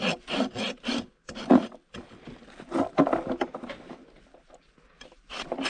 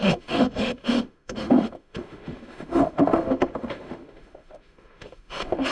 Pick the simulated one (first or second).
second